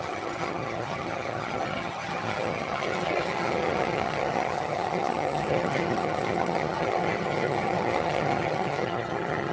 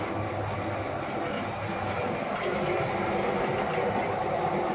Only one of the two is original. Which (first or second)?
second